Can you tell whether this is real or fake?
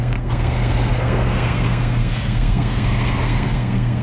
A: fake